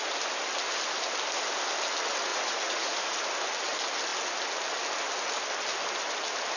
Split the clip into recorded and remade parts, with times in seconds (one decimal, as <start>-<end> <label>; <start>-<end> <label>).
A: 0.0-2.3 recorded; 2.3-3.2 remade; 3.2-6.6 recorded